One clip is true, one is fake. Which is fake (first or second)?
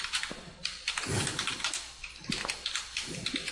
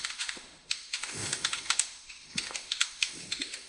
second